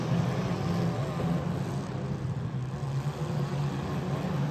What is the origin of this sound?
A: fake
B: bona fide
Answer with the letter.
B